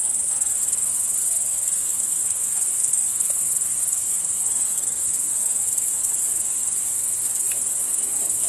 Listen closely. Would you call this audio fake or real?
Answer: fake